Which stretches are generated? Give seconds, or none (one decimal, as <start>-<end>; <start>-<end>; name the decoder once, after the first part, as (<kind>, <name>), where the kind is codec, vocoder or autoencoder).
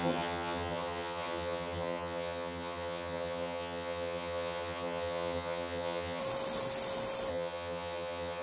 0.0-6.2 (vocoder, HiFi-GAN); 7.3-8.4